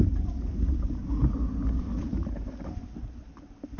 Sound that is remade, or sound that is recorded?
recorded